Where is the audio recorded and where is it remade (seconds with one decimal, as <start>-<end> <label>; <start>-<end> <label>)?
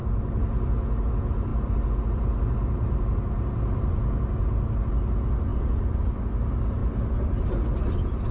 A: 0.0-8.3 recorded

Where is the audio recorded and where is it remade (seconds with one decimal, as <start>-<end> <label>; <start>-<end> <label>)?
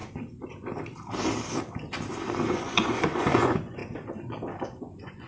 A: 0.0-2.5 recorded; 2.5-3.8 remade; 3.8-4.8 recorded; 4.8-5.3 remade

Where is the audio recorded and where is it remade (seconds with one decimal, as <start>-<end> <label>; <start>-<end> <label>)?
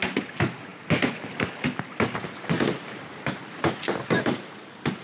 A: 0.0-5.0 recorded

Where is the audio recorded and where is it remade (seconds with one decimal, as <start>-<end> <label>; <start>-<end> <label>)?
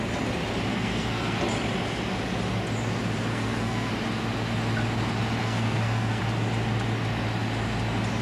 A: 0.0-0.7 recorded; 0.7-1.4 remade; 1.4-3.3 recorded; 3.3-3.9 remade; 3.9-5.4 recorded; 5.4-6.2 remade; 6.2-8.2 recorded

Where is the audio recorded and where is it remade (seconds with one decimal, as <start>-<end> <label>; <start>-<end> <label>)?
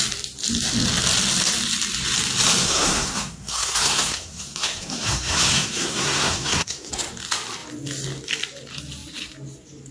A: 0.0-2.6 recorded; 2.6-6.9 remade; 6.9-9.9 recorded